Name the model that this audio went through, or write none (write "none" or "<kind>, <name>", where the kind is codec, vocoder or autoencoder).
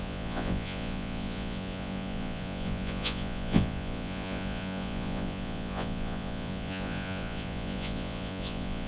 vocoder, Vocos